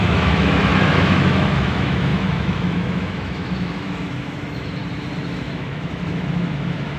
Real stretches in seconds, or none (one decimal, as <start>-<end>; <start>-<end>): 4.8-5.3